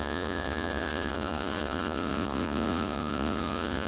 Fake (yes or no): yes